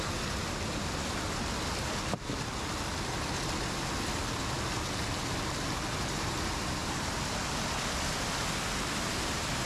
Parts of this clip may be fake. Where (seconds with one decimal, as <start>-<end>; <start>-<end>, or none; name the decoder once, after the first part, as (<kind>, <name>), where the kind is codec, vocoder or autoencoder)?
none